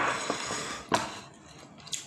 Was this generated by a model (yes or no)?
no